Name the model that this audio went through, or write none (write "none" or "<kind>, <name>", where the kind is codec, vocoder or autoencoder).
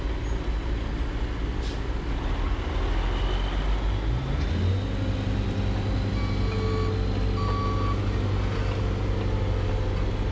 none